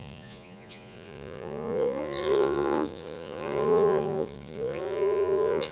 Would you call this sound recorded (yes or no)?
no